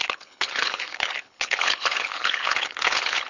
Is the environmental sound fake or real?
fake